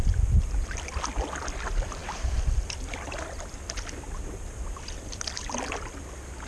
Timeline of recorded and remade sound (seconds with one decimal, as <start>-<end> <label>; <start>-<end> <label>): 0.0-6.5 recorded